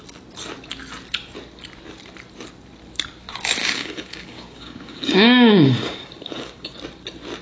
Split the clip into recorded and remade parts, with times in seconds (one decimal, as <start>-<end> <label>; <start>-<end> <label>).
0.0-3.6 recorded; 3.6-6.7 remade; 6.7-7.4 recorded